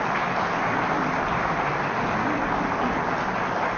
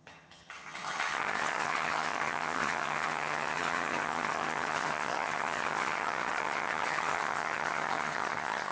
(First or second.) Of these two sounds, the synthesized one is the second